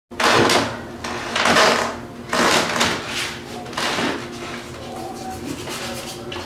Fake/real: real